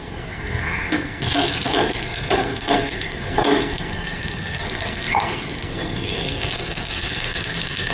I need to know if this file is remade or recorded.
remade